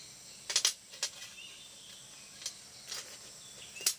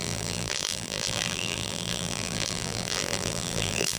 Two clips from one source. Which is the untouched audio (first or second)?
first